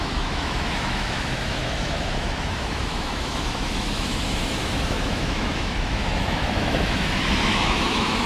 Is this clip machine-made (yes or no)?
yes